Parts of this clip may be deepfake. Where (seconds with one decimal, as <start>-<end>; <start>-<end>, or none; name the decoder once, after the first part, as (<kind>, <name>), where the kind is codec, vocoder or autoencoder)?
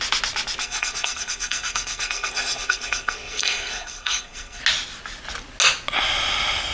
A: 0.6-4.6 (codec, SNAC)